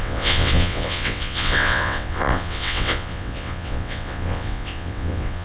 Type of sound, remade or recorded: remade